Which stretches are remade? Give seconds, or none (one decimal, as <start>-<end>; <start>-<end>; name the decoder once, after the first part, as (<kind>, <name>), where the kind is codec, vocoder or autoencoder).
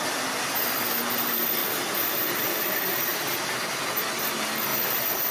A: 1.6-3.8 (vocoder, BigVGAN v2); 4.7-5.3